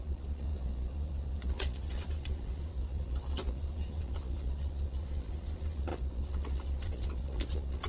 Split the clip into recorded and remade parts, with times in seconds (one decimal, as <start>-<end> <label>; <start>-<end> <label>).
0.0-7.9 remade